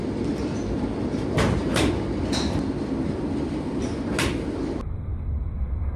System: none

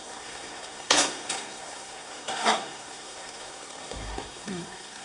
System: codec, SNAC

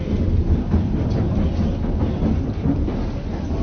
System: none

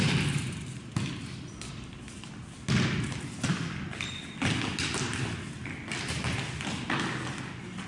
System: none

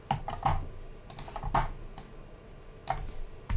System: none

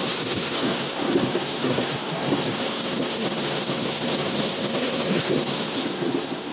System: codec, SNAC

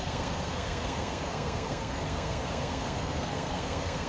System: codec, SNAC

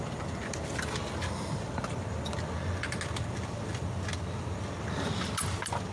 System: none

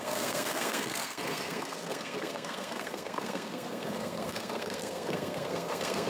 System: codec, SNAC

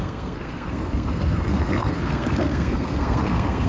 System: codec, SNAC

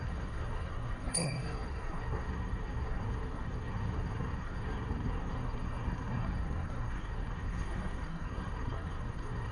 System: codec, SNAC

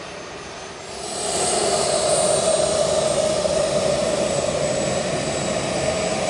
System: none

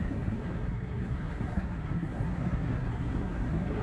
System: codec, SNAC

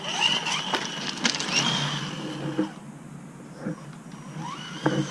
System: none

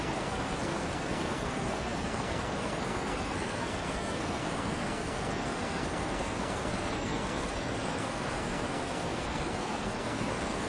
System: codec, SNAC